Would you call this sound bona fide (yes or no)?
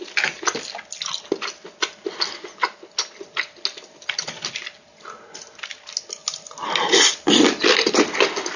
yes